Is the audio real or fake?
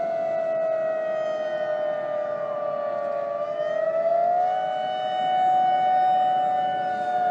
real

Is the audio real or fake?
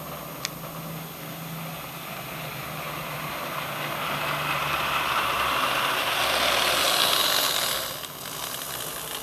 real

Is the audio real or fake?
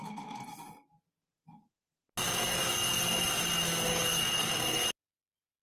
real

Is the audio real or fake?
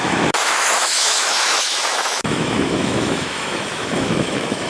fake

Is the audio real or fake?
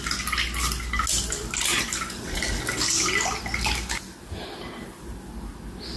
real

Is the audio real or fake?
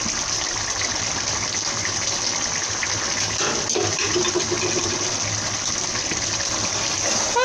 real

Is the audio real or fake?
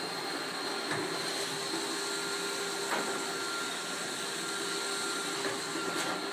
real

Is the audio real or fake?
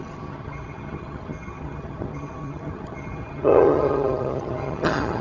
fake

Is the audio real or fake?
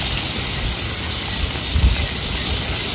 real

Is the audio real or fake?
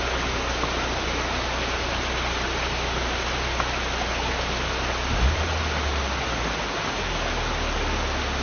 real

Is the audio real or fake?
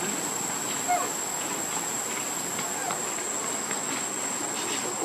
real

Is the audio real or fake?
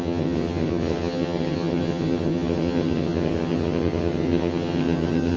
fake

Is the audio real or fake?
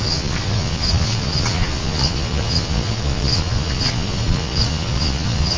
fake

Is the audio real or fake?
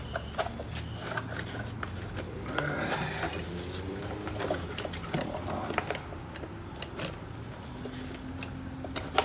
real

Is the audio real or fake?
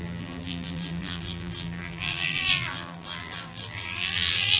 fake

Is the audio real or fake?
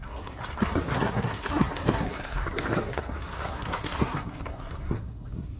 fake